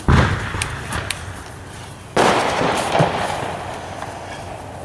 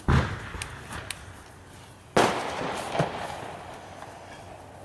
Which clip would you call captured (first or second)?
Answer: second